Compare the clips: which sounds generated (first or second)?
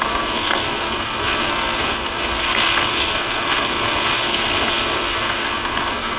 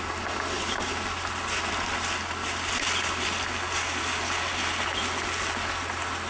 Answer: first